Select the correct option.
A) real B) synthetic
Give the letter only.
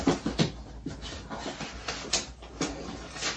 A